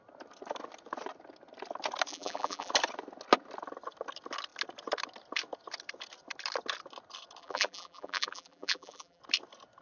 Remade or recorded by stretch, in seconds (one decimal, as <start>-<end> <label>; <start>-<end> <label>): 0.0-2.1 recorded; 2.1-2.7 remade; 2.7-7.4 recorded; 7.4-9.2 remade; 9.2-9.8 recorded